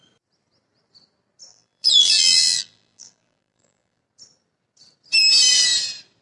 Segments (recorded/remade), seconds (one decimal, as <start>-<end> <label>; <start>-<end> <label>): 0.0-1.5 recorded; 1.5-4.0 remade; 4.0-6.2 recorded

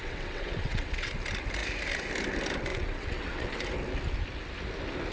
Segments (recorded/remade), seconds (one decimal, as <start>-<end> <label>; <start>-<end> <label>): 0.0-1.1 remade; 1.1-2.7 recorded; 2.7-3.6 remade; 3.6-5.1 recorded

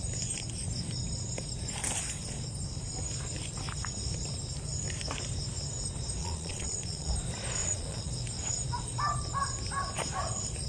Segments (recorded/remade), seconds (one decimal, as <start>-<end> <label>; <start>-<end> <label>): 0.0-6.2 recorded; 6.2-7.1 remade; 7.1-7.6 recorded; 7.6-8.1 remade; 8.1-10.7 recorded

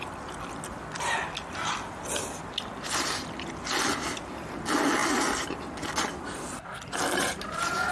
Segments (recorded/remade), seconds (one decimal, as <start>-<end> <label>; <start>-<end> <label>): 0.0-7.9 recorded

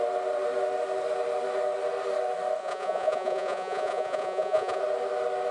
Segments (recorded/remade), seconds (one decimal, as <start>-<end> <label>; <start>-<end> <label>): 0.0-2.6 recorded; 2.6-4.8 remade; 4.8-5.5 recorded

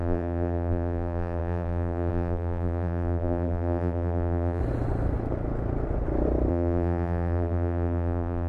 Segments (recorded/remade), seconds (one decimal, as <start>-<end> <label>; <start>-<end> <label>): 0.0-4.6 remade; 4.6-6.5 recorded; 6.5-8.5 remade

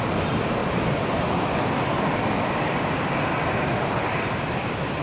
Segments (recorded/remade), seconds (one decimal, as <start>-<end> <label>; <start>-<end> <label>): 0.0-5.0 recorded

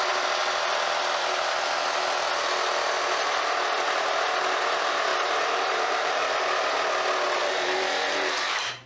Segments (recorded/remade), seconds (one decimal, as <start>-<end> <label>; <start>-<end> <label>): 0.0-5.1 recorded; 5.1-6.2 remade; 6.2-7.4 recorded; 7.4-8.9 remade